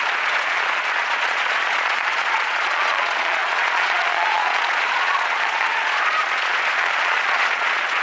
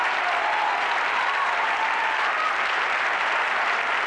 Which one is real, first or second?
second